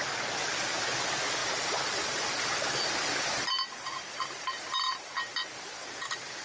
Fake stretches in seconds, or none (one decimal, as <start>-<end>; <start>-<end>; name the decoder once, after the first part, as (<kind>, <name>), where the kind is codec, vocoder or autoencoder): none